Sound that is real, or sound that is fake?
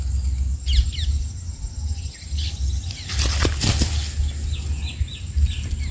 real